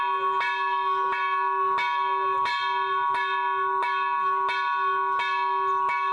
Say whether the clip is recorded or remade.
recorded